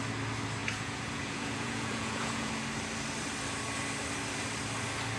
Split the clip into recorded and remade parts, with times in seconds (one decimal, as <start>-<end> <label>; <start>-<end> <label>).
0.0-0.6 recorded; 0.6-2.5 remade; 2.5-5.2 recorded